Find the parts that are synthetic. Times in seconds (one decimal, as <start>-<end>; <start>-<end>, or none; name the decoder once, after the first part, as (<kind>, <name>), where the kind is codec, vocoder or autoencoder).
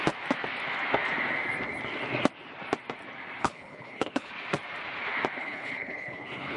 3.4-4.3 (codec, HILCodec); 5.4-6.6